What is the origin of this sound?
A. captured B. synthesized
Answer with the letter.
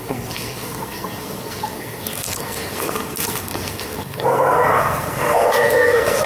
B